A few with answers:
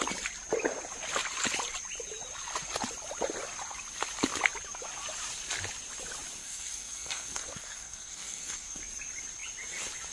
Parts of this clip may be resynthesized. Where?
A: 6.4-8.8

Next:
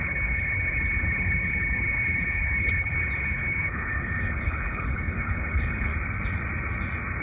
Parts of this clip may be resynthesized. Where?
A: 0.0-5.9

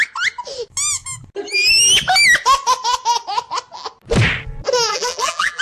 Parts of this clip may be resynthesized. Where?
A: 4.9-5.6